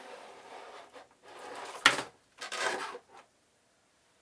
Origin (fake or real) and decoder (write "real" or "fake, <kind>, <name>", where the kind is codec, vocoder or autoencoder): real